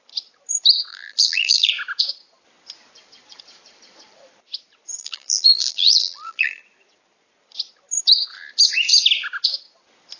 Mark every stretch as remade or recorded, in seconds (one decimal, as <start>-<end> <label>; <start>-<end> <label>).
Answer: 0.0-0.9 recorded; 0.9-1.7 remade; 1.7-5.0 recorded; 5.0-6.6 remade; 6.6-10.2 recorded